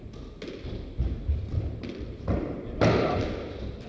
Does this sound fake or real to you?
real